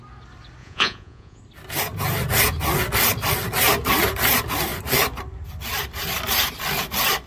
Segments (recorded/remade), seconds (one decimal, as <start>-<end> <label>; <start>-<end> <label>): 0.0-0.6 recorded; 0.6-1.4 remade; 1.4-7.3 recorded